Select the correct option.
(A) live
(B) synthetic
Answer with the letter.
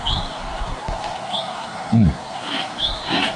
B